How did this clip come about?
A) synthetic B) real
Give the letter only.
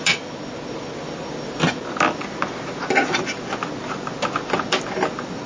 B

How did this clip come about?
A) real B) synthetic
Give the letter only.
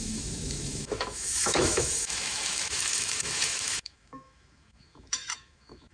B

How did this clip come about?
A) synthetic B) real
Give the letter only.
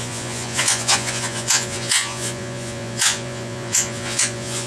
A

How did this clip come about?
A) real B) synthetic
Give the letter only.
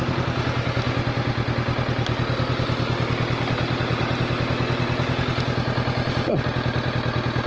A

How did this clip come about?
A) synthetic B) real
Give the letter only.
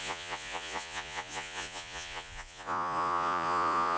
A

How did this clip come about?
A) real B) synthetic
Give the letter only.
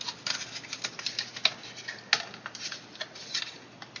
A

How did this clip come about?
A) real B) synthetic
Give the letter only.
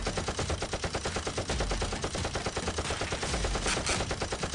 A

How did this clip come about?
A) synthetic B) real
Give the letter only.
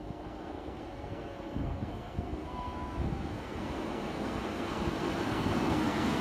A